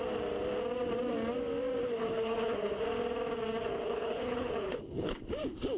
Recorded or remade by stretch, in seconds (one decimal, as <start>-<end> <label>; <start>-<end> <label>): 0.0-1.8 recorded; 1.8-2.8 remade; 2.8-3.7 recorded; 3.7-5.2 remade; 5.2-5.8 recorded